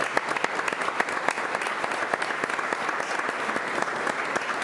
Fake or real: real